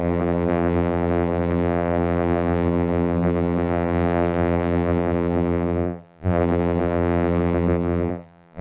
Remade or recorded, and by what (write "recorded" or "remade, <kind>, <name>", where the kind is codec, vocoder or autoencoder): remade, vocoder, BigVGAN v2